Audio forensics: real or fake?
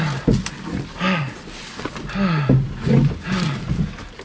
real